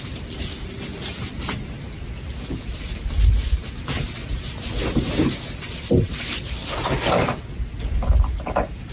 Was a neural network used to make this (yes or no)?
no